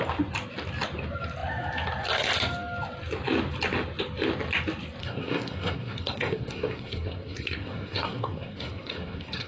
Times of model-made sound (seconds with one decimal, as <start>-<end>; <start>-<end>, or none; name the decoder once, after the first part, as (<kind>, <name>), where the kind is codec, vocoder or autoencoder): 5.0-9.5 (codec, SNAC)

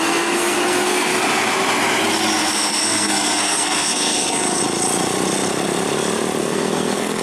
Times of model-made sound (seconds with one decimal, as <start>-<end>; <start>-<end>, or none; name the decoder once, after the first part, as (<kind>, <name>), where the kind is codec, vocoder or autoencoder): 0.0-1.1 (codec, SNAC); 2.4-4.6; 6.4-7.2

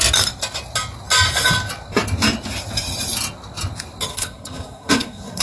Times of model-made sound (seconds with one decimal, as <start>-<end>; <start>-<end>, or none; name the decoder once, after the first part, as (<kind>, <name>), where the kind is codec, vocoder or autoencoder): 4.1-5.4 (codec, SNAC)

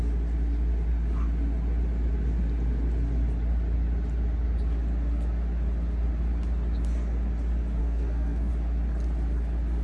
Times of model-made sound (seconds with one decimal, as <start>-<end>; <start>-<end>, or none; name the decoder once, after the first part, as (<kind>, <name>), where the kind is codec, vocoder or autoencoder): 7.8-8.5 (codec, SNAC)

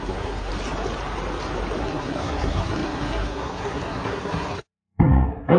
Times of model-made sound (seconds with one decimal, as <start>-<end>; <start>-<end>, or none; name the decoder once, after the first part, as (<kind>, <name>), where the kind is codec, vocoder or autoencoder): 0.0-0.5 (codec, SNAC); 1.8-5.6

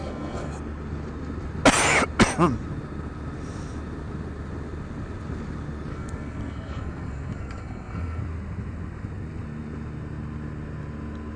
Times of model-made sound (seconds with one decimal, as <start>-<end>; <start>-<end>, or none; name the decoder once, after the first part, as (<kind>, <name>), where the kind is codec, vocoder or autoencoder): 0.0-0.5 (codec, SNAC); 5.9-8.2

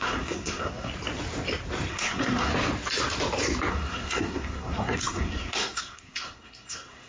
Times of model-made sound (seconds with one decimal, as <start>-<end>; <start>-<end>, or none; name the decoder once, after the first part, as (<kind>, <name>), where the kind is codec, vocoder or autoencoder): 0.0-0.9 (codec, SNAC); 1.9-2.5; 3.7-7.1

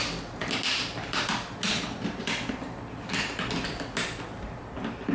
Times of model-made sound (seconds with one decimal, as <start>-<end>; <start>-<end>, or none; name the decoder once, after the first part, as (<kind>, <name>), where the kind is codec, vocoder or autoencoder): none